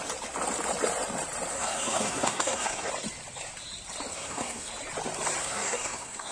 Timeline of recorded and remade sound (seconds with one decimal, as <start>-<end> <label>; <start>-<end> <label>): 0.0-1.5 recorded; 1.5-2.9 remade; 2.9-4.1 recorded; 4.1-4.7 remade; 4.7-5.4 recorded; 5.4-6.3 remade